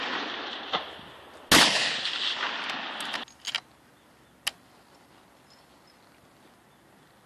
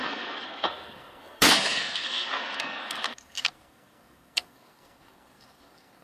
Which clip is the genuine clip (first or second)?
first